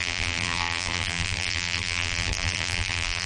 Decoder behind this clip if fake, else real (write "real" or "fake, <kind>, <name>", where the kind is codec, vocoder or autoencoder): fake, vocoder, BigVGAN v2